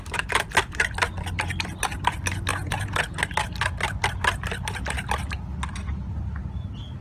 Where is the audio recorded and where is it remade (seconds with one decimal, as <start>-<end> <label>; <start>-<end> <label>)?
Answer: 0.0-2.5 recorded; 2.5-3.2 remade; 3.2-7.0 recorded